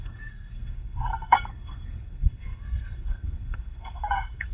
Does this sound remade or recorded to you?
remade